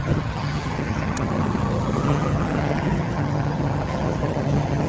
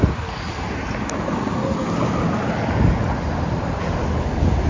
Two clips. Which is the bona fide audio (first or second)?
second